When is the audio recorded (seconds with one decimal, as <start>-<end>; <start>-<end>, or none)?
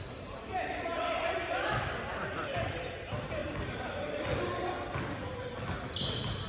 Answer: 3.4-6.5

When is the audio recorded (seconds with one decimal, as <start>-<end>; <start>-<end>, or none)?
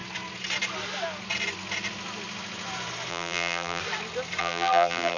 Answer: 0.0-3.1; 3.8-4.4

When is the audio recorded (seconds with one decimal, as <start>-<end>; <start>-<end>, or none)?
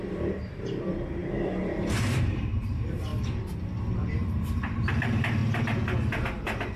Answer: 3.1-4.1; 5.4-6.8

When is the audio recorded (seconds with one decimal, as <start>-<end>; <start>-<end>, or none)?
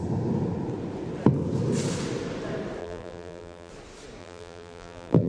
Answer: 0.0-2.8; 3.7-4.2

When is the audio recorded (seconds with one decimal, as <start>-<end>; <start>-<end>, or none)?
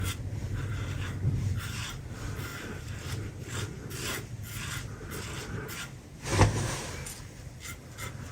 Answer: 0.0-2.5; 4.7-8.3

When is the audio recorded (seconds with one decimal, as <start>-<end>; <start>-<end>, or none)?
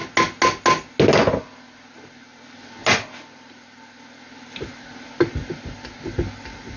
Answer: 0.0-6.8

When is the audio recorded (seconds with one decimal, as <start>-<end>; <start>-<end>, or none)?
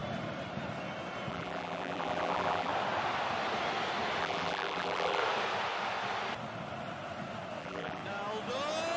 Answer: 0.0-1.3; 2.7-4.2; 5.2-7.6; 8.0-9.0